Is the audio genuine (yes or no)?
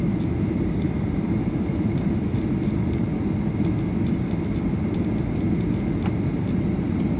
yes